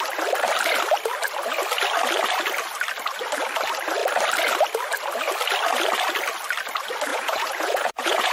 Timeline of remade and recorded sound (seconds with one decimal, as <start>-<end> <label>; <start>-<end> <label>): 0.0-7.1 recorded; 7.1-8.3 remade